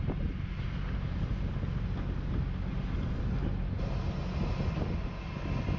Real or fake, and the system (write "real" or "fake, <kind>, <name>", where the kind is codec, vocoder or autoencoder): real